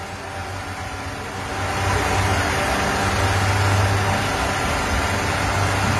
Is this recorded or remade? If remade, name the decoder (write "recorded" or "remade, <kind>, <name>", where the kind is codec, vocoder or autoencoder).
recorded